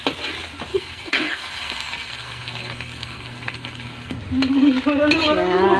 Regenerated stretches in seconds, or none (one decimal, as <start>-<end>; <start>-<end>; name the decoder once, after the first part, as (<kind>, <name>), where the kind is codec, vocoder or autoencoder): 0.7-4.2 (codec, SNAC)